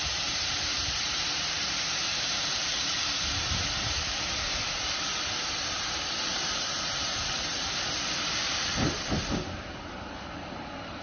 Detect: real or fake fake